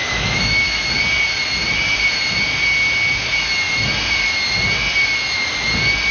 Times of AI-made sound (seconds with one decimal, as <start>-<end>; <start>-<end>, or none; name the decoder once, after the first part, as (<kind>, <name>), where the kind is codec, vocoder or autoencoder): 0.0-0.9 (autoencoder, DAC-VAE)

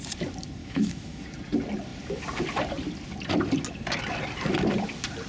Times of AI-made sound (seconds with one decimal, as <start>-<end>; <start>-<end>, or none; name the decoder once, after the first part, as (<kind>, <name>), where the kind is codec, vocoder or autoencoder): 0.6-1.2 (autoencoder, DAC-VAE)